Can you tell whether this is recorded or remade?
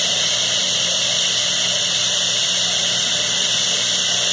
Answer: remade